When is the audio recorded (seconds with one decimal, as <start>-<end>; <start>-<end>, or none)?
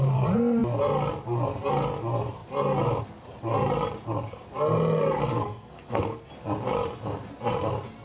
0.0-5.3; 6.3-8.0